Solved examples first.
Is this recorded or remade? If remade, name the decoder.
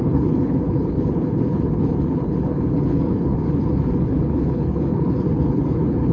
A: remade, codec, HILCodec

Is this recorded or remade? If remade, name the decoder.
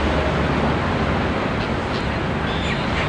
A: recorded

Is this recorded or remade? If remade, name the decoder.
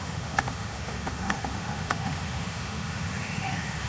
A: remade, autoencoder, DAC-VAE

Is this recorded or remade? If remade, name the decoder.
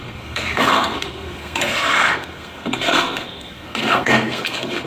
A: remade, codec, SNAC